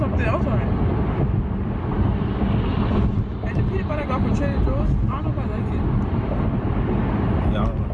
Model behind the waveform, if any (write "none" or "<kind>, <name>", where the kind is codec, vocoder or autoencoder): none